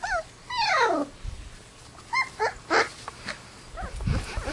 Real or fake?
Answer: real